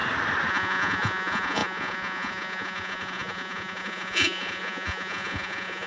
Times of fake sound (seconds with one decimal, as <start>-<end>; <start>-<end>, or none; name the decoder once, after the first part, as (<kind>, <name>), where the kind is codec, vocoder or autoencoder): 0.5-5.9 (vocoder, Vocos)